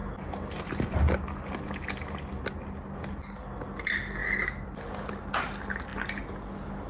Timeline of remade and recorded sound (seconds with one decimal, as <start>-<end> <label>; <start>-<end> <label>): 0.0-6.9 recorded